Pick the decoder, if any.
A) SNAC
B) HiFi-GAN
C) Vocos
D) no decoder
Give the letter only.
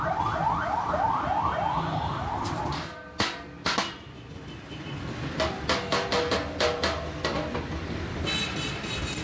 D